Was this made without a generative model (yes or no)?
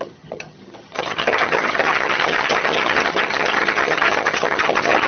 no